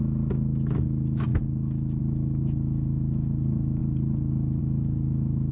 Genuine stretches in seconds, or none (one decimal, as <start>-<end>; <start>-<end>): 1.3-2.0; 3.8-4.6